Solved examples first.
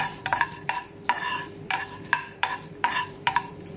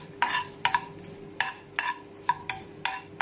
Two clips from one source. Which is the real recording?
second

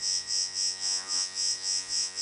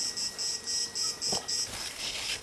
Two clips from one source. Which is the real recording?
second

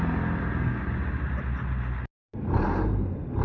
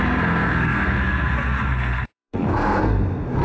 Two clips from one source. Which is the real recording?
first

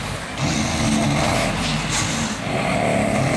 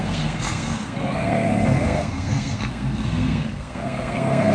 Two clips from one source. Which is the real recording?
first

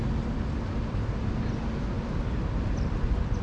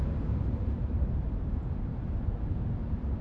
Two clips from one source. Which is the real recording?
first